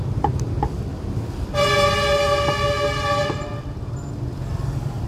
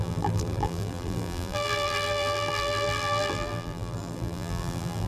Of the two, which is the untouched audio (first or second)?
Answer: first